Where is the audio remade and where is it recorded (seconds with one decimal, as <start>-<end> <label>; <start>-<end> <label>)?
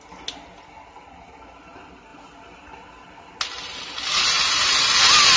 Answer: 0.0-5.4 recorded